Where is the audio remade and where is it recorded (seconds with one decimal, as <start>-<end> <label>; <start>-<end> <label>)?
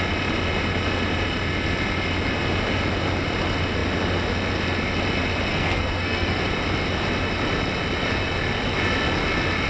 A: 0.0-5.5 recorded; 5.5-6.4 remade; 6.4-9.7 recorded